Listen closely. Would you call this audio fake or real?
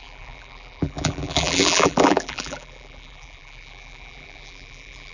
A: fake